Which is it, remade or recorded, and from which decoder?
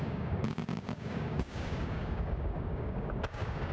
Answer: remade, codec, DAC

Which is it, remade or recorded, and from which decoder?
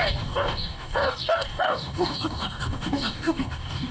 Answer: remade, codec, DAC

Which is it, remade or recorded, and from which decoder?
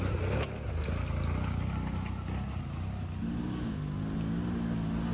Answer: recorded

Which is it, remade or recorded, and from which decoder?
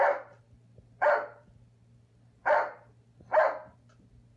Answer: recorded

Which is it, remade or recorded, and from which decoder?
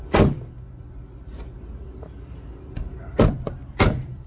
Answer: recorded